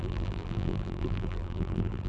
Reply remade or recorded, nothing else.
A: remade